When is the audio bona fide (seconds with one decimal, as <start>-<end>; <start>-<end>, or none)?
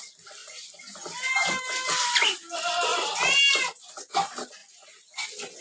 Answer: 0.0-5.6